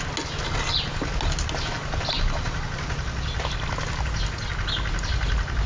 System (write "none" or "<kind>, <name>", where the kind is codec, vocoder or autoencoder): none